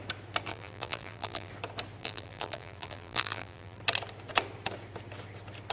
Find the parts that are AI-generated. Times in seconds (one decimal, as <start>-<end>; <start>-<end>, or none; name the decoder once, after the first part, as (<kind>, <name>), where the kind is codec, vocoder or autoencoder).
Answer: 0.5-1.5 (vocoder, BigVGAN v2); 2.0-3.8